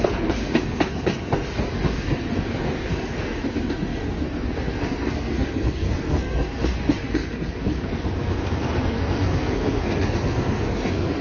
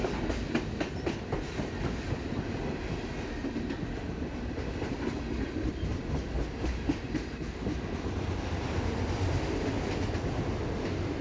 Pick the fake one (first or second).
first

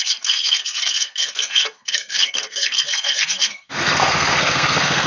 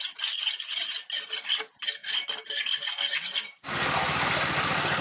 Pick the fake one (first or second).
first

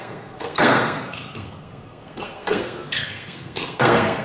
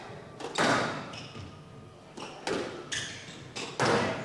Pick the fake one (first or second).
first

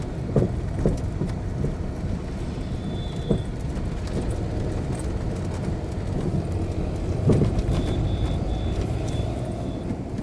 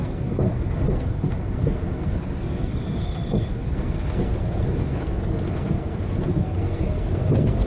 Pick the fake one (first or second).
second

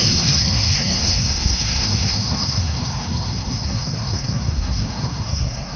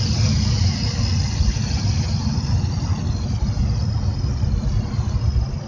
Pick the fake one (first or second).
first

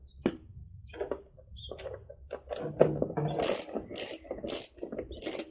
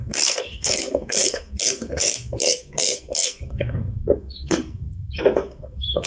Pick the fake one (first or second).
second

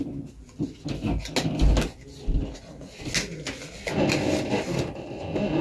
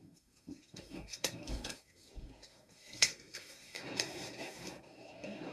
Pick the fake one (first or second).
second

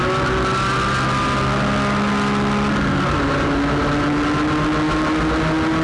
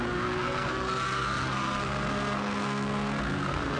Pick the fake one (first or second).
second